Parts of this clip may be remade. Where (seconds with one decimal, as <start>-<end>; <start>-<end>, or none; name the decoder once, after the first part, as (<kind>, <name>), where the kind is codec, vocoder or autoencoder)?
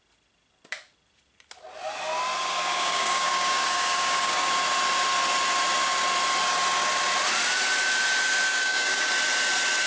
2.4-4.5 (codec, DAC); 8.5-9.1